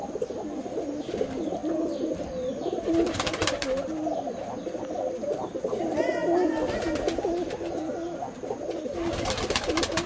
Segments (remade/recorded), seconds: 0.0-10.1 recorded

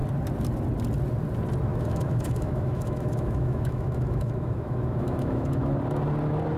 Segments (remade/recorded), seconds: 0.0-1.7 recorded; 1.7-5.7 remade; 5.7-6.6 recorded

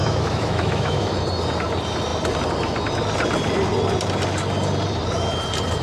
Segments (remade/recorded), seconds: 0.0-1.1 remade; 1.1-5.8 recorded

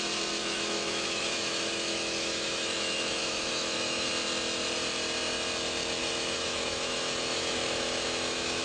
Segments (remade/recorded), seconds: 0.0-0.4 recorded; 0.4-4.1 remade; 4.1-6.0 recorded; 6.0-8.6 remade

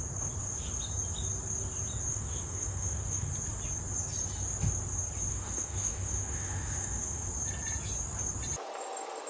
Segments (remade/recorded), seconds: 0.0-2.1 recorded; 2.1-3.3 remade; 3.3-5.3 recorded; 5.3-7.3 remade; 7.3-9.3 recorded

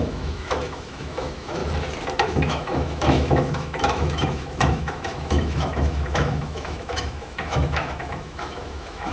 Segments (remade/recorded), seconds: 0.0-1.6 remade; 1.6-2.2 recorded; 2.2-9.1 remade

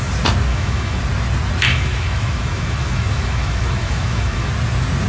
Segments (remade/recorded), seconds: 0.0-0.5 recorded; 0.5-1.0 remade; 1.0-1.7 recorded; 1.7-4.5 remade; 4.5-5.1 recorded

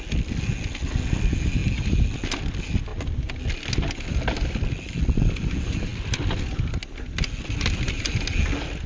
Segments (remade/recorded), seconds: 0.0-8.9 recorded